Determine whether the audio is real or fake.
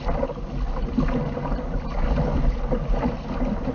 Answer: real